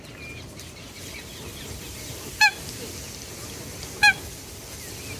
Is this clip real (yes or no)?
yes